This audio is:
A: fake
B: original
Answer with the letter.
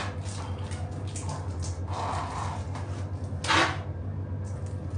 B